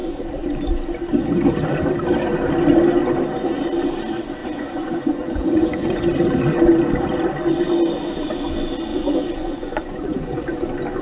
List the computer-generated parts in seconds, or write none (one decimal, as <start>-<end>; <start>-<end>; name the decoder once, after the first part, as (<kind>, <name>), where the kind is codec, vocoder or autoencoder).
4.4-6.0 (vocoder, Vocos); 8.9-10.4